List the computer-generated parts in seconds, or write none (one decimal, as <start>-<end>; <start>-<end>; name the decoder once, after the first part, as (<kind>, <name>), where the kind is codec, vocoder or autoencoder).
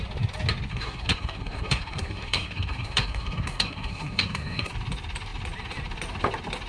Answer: 0.7-4.7 (codec, SNAC)